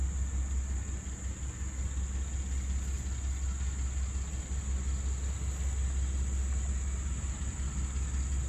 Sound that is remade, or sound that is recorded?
recorded